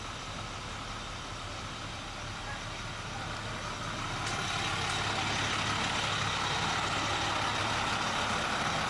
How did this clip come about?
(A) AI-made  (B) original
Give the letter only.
B